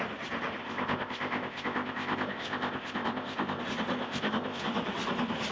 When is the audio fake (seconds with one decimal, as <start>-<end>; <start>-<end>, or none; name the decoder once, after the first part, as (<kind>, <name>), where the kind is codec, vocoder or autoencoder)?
0.6-3.6 (codec, ZipCodec); 4.0-4.6